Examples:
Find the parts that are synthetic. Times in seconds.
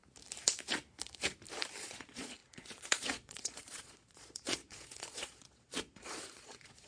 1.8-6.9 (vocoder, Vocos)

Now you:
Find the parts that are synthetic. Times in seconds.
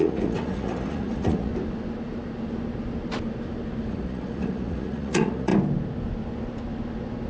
0.0-1.5 (vocoder, Vocos); 3.9-5.5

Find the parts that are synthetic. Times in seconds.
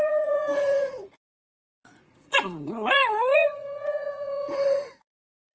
0.0-5.5 (vocoder, Vocos)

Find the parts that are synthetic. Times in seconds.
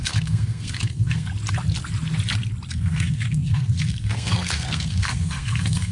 0.0-1.3 (codec, SNAC); 2.7-5.9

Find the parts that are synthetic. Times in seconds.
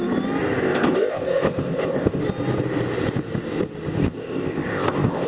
0.6-2.2 (codec, ZipCodec); 4.0-5.3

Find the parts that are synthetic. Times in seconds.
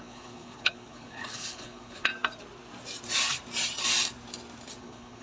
0.0-2.1 (codec, HILCodec); 4.8-5.2